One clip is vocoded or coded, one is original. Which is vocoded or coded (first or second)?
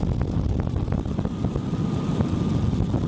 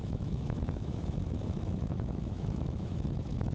second